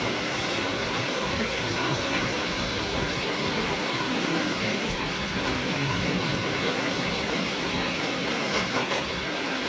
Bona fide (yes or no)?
no